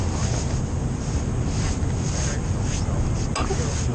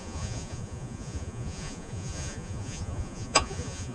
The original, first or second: first